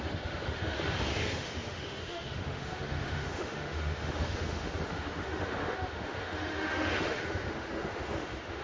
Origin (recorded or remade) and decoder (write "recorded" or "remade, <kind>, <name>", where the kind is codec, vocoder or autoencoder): remade, autoencoder, DAC-VAE